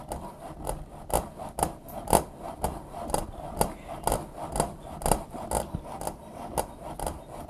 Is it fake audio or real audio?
real